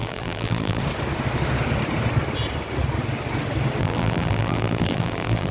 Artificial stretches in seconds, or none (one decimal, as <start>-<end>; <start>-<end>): 0.0-0.8; 3.8-5.5